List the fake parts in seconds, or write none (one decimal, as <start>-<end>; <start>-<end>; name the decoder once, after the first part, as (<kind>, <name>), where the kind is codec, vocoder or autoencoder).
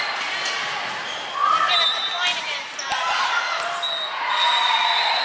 none